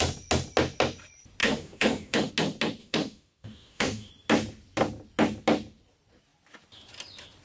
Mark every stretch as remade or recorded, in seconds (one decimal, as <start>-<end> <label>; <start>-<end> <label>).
0.0-1.4 recorded; 1.4-2.3 remade; 2.3-2.8 recorded; 2.8-4.1 remade; 4.1-7.4 recorded

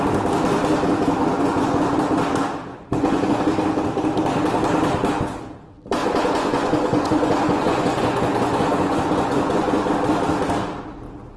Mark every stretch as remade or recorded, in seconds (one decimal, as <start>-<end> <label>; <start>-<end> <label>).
0.0-1.3 recorded; 1.3-1.9 remade; 1.9-2.7 recorded; 2.7-3.4 remade; 3.4-6.0 recorded; 6.0-9.9 remade; 9.9-11.4 recorded

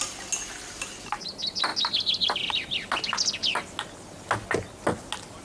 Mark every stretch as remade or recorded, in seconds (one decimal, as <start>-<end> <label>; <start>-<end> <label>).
0.0-5.4 recorded